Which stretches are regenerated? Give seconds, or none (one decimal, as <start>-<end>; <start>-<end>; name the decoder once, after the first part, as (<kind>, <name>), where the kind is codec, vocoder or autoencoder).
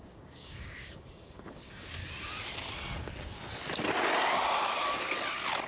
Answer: 0.0-2.0 (codec, DAC)